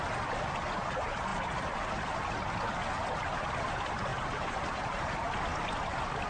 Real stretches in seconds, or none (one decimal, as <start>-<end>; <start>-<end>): 0.0-4.1; 5.1-6.3